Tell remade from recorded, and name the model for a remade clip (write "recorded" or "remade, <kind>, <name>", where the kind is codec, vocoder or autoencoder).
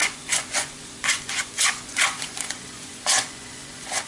remade, vocoder, Vocos